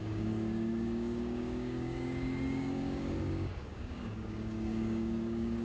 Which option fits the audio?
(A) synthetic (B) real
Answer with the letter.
A